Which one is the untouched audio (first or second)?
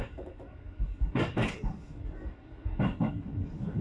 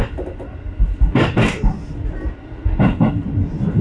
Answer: second